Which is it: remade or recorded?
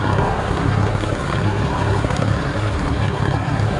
remade